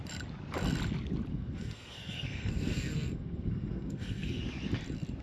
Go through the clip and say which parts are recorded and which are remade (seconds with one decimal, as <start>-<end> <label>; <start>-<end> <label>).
0.0-1.3 recorded; 1.3-4.4 remade; 4.4-5.2 recorded

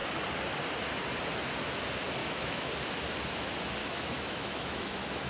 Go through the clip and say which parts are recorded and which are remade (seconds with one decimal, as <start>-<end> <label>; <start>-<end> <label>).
0.0-2.2 recorded; 2.2-2.7 remade; 2.7-3.8 recorded; 3.8-5.3 remade

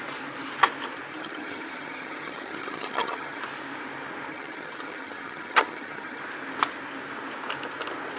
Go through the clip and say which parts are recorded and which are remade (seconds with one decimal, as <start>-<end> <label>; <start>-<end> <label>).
0.0-1.1 recorded; 1.1-3.4 remade; 3.4-4.3 recorded; 4.3-6.2 remade; 6.2-8.2 recorded

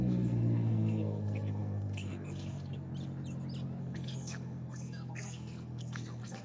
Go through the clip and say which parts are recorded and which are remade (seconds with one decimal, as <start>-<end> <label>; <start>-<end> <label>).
0.0-2.9 remade; 2.9-3.8 recorded; 3.8-6.4 remade

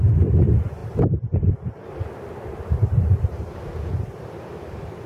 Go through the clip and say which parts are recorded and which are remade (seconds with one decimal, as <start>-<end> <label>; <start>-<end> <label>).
0.0-5.1 recorded